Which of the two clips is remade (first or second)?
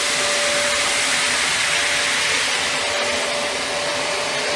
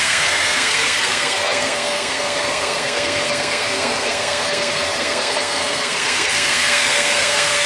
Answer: second